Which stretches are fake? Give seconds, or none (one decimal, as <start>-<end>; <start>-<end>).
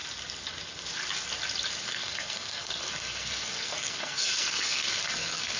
1.9-5.6